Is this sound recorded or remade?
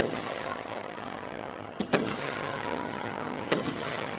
remade